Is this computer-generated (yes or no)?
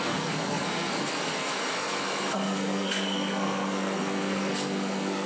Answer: yes